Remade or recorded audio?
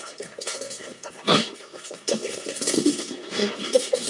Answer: remade